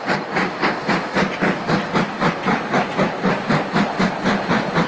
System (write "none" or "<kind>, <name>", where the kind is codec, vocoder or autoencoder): none